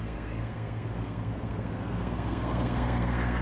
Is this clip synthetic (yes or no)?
yes